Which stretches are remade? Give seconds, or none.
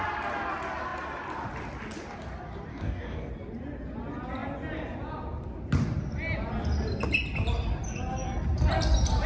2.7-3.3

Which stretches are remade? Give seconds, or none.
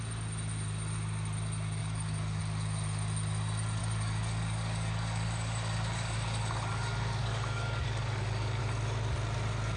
1.8-2.4; 3.8-8.6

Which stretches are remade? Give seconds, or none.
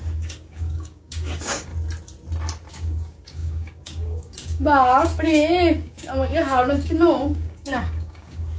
0.0-1.7; 2.7-8.6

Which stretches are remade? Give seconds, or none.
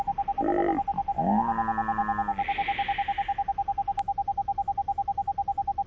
none